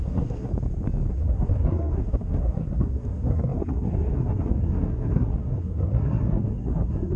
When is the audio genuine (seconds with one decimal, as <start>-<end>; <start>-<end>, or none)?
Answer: 0.5-1.1